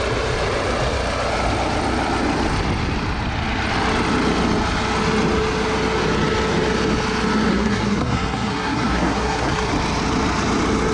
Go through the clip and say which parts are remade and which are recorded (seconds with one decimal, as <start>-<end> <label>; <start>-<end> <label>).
0.0-7.5 recorded; 7.5-9.7 remade; 9.7-10.9 recorded